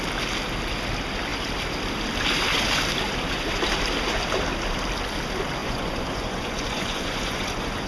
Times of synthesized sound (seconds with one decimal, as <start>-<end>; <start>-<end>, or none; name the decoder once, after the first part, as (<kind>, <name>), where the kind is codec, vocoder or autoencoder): 5.6-7.9 (vocoder, Vocos)